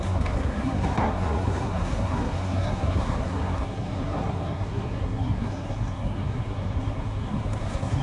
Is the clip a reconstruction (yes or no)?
yes